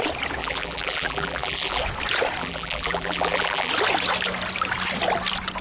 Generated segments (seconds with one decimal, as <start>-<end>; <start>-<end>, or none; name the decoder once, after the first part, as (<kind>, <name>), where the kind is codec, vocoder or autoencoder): 0.4-1.8 (vocoder, BigVGAN v2); 2.4-3.7